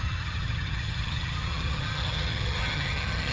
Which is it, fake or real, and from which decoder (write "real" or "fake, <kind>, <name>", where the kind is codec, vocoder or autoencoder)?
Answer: fake, vocoder, HiFi-GAN